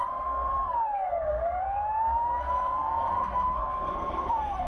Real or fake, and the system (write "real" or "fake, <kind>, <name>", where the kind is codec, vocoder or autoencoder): fake, codec, SNAC